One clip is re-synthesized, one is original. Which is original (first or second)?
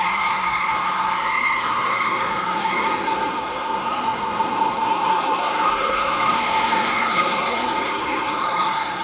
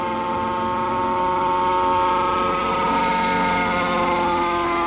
second